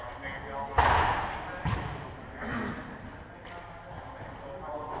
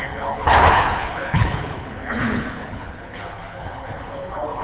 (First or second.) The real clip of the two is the first